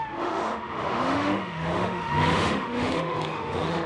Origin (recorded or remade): remade